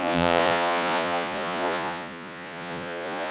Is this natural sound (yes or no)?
no